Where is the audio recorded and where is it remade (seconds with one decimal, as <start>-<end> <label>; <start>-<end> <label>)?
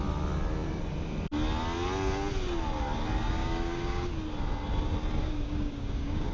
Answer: 0.0-3.4 recorded; 3.4-4.1 remade; 4.1-5.2 recorded; 5.2-6.3 remade